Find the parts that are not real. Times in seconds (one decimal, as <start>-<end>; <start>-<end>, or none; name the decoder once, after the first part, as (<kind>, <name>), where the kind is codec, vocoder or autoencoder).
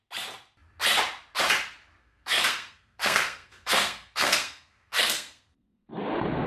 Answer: 2.0-5.9 (codec, SNAC)